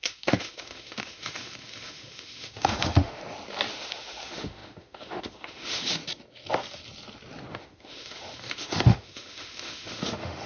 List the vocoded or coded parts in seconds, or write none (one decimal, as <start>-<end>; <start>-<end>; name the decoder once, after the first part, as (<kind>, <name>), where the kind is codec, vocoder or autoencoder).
0.0-3.2 (autoencoder, DAC-VAE); 3.7-6.0; 7.5-10.5